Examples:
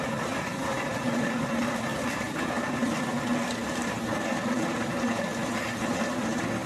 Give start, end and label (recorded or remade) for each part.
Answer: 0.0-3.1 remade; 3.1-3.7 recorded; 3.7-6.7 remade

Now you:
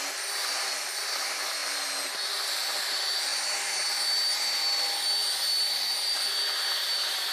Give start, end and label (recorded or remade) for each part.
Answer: 0.0-7.3 recorded

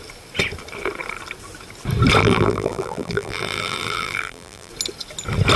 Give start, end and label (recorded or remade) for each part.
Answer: 0.0-2.2 recorded; 2.2-4.7 remade; 4.7-5.6 recorded

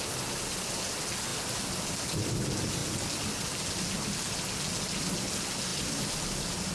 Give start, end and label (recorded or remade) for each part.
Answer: 0.0-5.7 recorded; 5.7-6.3 remade; 6.3-6.7 recorded